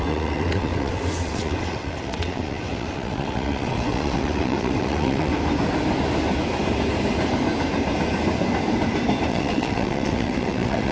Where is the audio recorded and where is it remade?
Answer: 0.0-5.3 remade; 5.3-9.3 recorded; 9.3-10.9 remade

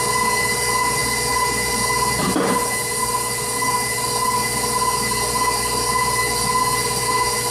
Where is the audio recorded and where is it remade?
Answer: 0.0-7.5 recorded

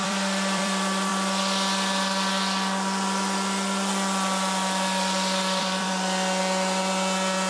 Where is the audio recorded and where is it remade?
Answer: 0.0-1.1 remade; 1.1-5.6 recorded; 5.6-7.5 remade

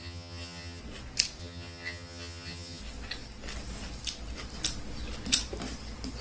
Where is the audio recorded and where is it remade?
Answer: 0.0-0.8 remade; 0.8-1.4 recorded; 1.4-2.8 remade; 2.8-6.2 recorded